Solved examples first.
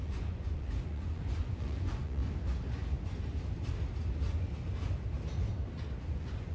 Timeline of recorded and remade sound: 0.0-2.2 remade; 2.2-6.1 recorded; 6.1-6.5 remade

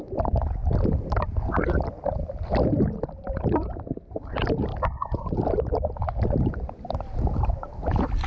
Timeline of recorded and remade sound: 0.0-8.3 recorded

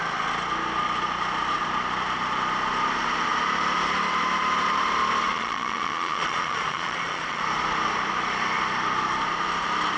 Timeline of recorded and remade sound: 0.0-5.3 recorded; 5.3-7.4 remade; 7.4-10.0 recorded

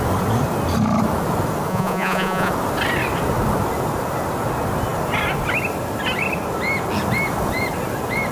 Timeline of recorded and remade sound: 0.0-1.7 recorded; 1.7-2.5 remade; 2.5-8.3 recorded